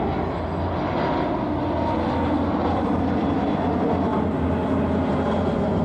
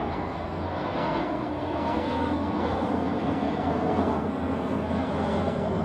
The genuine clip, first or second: first